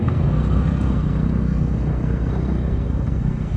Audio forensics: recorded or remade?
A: remade